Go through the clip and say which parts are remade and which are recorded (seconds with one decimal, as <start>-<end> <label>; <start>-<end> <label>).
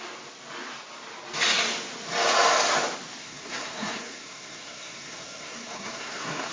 0.0-3.2 recorded; 3.2-6.5 remade